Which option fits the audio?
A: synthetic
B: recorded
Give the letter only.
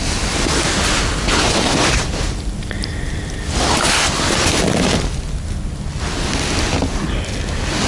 B